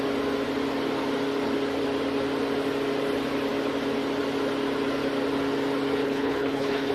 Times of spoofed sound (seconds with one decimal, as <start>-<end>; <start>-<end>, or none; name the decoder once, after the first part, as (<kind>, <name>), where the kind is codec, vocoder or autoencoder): 6.0-6.9 (codec, HILCodec)

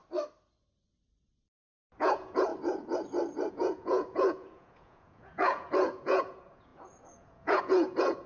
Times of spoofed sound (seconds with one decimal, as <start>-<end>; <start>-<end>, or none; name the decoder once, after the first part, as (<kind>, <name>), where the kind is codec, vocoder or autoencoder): 2.0-2.5 (vocoder, Vocos); 3.5-8.3

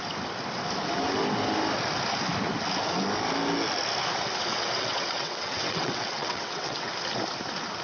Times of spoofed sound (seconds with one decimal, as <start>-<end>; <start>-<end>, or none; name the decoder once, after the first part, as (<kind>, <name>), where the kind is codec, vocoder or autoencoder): 4.5-6.9 (vocoder, WaveNeXt)

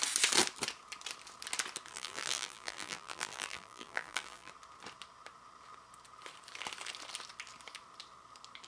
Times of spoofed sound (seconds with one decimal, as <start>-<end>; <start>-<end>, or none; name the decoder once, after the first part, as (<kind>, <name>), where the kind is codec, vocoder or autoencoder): 1.9-4.5 (vocoder, BigVGAN v2)

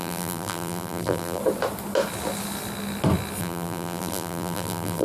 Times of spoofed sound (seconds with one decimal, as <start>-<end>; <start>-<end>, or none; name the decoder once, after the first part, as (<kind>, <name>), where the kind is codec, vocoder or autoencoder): 0.0-1.4 (vocoder, BigVGAN v2); 3.4-5.0

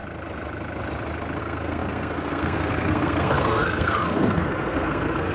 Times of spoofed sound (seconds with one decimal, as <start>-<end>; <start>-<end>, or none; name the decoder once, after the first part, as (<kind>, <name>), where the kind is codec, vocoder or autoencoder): 1.4-5.3 (codec, SNAC)

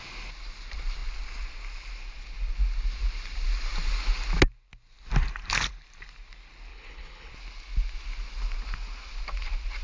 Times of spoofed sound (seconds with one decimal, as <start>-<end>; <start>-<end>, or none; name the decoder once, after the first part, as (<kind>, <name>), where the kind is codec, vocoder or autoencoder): 6.7-7.3 (codec, HILCodec)

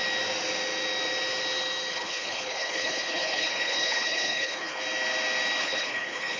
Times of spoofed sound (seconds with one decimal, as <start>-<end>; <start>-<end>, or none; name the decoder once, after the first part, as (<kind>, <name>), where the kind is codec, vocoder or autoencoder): 1.9-4.8 (codec, HILCodec); 5.6-6.4